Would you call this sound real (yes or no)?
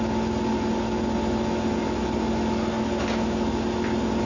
yes